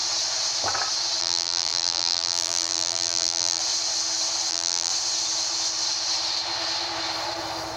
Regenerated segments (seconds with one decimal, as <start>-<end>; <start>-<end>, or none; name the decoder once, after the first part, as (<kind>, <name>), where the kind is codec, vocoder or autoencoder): 1.2-3.6 (vocoder, BigVGAN v2); 4.5-4.9